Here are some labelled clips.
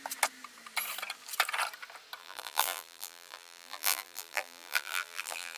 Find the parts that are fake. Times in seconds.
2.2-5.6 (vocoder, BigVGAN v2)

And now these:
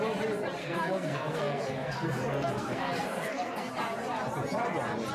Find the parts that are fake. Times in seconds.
0.6-3.7 (codec, SNAC)

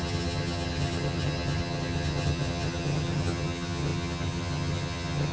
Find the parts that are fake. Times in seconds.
0.0-5.3 (vocoder, HiFi-GAN)

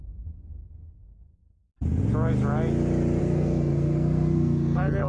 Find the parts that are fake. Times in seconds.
0.0-1.6 (codec, SNAC); 3.2-5.1